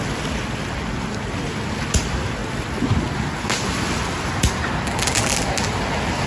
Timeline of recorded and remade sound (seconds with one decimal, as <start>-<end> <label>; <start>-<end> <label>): 0.0-6.3 recorded

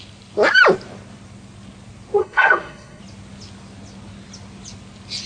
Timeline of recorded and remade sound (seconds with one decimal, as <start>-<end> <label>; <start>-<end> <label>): 0.0-2.2 recorded; 2.2-3.0 remade; 3.0-5.3 recorded

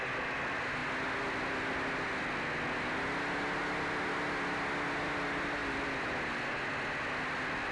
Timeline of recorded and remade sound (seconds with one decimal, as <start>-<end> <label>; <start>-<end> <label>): 0.0-7.7 recorded